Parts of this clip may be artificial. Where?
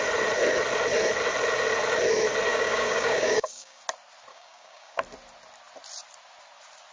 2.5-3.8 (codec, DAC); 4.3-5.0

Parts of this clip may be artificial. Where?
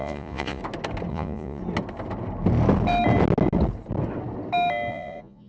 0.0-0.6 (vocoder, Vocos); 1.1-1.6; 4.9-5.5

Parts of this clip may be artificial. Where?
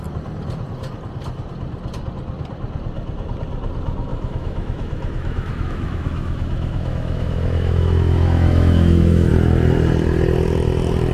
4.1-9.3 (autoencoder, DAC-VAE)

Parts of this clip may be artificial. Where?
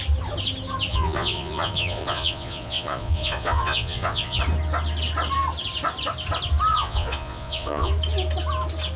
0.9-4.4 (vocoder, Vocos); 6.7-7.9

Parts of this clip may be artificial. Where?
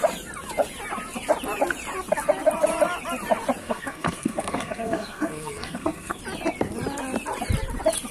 3.6-6.2 (codec, SNAC)